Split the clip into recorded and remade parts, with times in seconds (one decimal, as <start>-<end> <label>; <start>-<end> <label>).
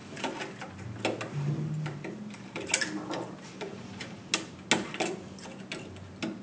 0.0-6.4 recorded